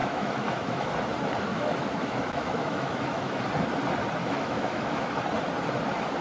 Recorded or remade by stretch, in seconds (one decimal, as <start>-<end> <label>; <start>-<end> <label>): 0.0-0.9 remade; 0.9-1.5 recorded; 1.5-3.4 remade; 3.4-4.2 recorded; 4.2-5.1 remade; 5.1-6.2 recorded